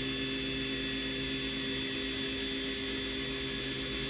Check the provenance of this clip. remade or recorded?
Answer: recorded